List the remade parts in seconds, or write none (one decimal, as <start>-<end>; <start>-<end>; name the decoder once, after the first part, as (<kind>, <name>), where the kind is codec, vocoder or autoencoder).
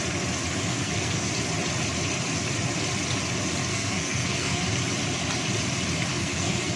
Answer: 0.7-1.3 (codec, SNAC); 3.7-4.6; 6.1-6.8